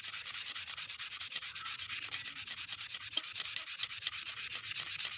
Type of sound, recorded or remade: recorded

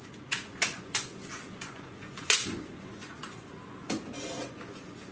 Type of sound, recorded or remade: remade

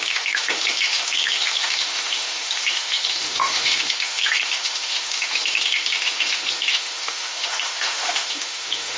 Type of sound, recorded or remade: remade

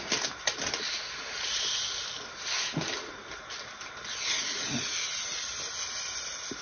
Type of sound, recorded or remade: recorded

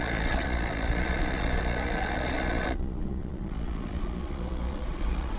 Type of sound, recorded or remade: remade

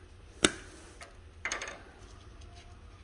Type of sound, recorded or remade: recorded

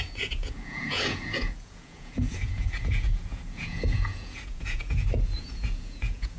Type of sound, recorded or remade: remade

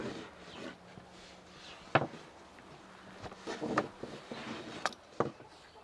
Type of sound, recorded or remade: recorded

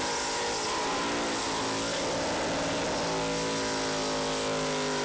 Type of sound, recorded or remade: recorded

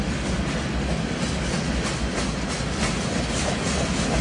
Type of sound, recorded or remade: recorded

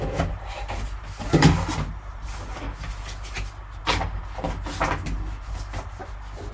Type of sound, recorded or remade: recorded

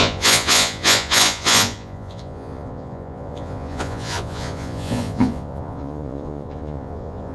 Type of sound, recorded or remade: remade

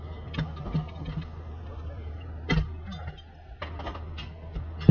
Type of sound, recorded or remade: recorded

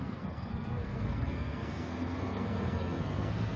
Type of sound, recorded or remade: remade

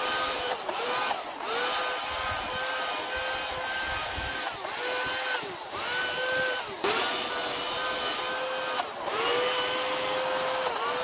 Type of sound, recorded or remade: recorded